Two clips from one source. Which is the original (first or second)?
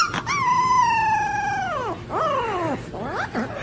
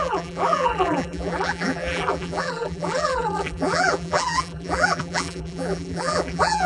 first